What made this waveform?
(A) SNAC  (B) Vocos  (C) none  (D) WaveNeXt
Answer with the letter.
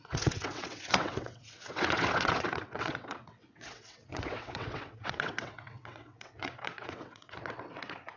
D